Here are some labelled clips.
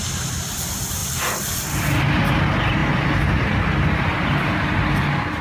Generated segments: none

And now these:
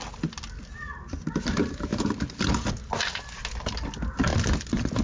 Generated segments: none